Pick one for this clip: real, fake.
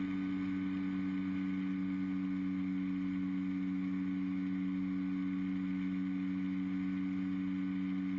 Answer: real